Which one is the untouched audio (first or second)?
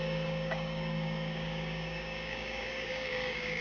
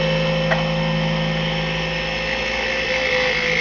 second